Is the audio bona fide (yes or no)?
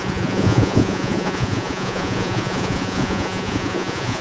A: no